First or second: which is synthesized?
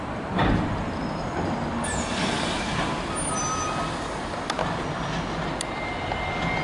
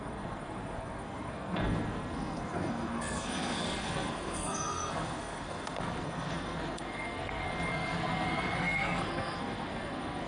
second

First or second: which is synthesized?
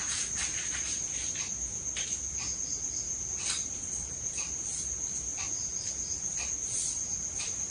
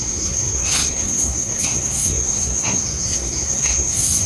second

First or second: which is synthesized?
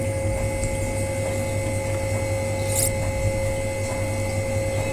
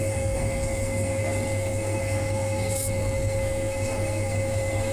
second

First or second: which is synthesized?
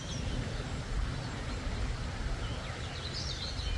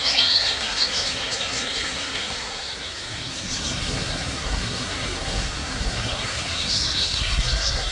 second